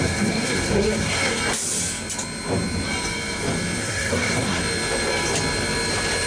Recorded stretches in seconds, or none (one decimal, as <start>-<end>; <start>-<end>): 1.4-3.8; 4.6-6.3